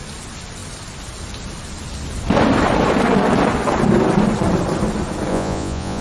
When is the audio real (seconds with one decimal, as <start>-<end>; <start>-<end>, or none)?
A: 0.0-5.3